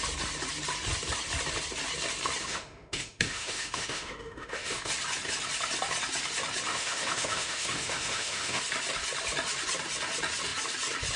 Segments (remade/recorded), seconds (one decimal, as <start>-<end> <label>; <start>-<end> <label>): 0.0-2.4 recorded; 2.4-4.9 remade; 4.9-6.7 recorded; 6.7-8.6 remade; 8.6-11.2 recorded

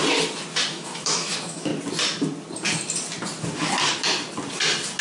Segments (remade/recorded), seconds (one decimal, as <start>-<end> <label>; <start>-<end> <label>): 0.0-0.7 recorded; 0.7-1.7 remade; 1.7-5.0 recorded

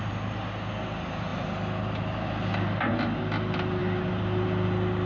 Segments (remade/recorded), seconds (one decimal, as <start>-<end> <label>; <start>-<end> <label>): 0.0-5.1 recorded

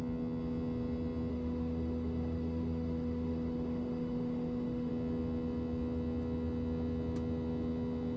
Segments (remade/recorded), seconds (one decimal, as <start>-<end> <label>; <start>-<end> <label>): 0.0-1.3 recorded; 1.3-4.9 remade; 4.9-8.2 recorded

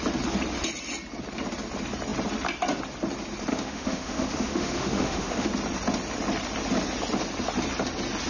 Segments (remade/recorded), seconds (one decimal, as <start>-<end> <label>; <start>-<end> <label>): 0.0-3.5 recorded; 3.5-5.5 remade; 5.5-8.3 recorded